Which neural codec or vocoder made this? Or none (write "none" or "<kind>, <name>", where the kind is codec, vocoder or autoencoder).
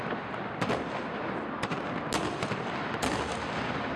none